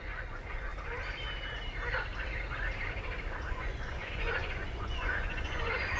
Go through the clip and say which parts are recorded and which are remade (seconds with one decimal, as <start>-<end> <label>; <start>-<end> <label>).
0.0-0.7 remade; 0.7-3.5 recorded; 3.5-6.0 remade